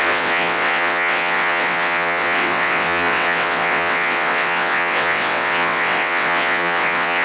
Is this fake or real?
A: fake